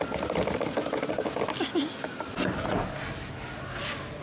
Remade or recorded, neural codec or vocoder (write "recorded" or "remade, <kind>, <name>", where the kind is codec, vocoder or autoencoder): recorded